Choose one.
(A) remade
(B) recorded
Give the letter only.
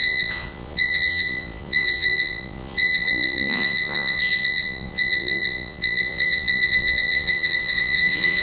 A